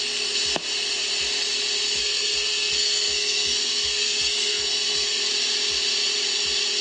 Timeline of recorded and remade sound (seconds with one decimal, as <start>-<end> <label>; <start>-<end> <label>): 0.0-2.0 recorded; 2.0-5.2 remade; 5.2-6.8 recorded